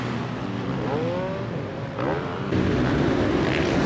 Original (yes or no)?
yes